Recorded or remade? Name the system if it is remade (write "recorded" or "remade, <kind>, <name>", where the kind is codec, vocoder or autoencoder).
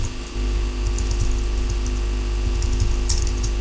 recorded